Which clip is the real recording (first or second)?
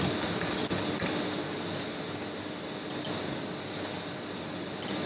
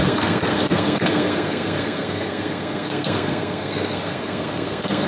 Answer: first